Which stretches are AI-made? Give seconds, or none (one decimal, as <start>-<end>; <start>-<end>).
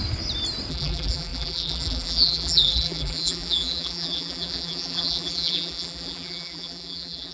0.7-7.3